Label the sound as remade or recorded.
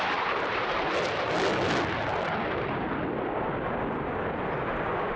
recorded